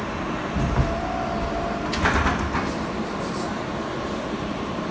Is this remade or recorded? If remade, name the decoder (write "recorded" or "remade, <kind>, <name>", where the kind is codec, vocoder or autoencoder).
recorded